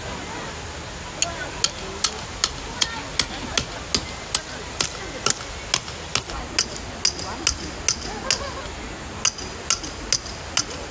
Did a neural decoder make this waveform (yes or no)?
no